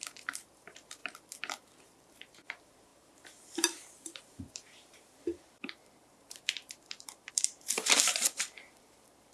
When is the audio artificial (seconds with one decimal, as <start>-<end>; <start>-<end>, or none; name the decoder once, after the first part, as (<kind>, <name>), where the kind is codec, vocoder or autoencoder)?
0.0-9.3 (vocoder, BigVGAN v2)